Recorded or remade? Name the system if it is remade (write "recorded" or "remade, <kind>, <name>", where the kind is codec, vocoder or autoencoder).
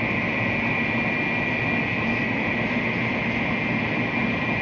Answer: recorded